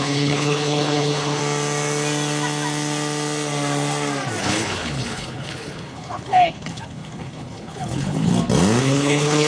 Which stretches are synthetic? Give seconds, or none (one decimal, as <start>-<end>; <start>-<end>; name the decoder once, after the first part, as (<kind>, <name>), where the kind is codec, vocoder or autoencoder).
0.0-1.4 (codec, HILCodec); 4.4-8.3; 8.8-9.5